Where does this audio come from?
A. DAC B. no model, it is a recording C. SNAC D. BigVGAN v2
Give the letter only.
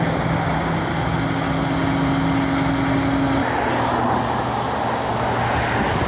B